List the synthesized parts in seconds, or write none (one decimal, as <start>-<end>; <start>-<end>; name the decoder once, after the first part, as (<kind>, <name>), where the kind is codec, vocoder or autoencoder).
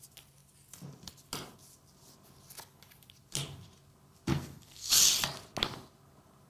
4.3-4.9 (codec, SNAC)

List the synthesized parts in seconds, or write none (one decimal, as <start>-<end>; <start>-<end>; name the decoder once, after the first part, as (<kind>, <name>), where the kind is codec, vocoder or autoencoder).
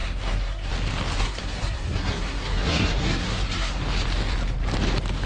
0.0-0.7 (codec, SNAC); 1.2-3.8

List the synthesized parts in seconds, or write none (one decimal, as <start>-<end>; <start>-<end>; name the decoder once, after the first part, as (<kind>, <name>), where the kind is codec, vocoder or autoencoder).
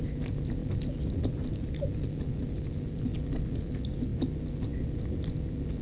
none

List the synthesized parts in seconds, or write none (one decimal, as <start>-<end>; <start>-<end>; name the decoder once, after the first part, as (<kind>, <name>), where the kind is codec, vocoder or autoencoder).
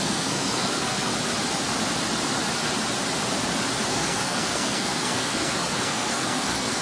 0.0-1.1 (codec, SNAC); 3.9-6.8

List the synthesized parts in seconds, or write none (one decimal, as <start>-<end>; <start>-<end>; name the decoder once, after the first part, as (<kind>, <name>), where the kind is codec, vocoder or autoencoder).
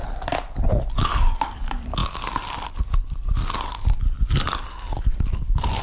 none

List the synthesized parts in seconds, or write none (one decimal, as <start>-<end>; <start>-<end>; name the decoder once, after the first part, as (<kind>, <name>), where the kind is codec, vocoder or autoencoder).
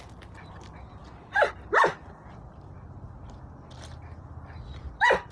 none